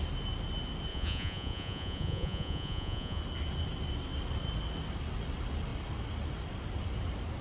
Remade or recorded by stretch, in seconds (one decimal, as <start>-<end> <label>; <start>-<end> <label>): 0.0-0.9 recorded; 0.9-3.2 remade; 3.2-7.4 recorded